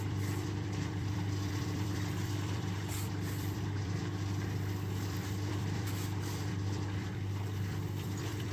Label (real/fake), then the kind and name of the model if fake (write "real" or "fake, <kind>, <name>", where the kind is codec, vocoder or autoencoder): fake, vocoder, BigVGAN v2